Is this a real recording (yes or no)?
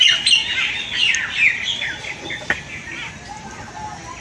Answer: yes